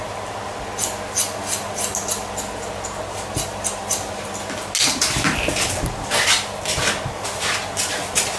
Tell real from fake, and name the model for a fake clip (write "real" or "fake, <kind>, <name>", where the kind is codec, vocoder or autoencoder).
real